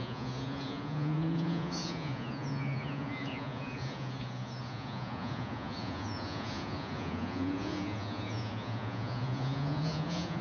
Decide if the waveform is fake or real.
fake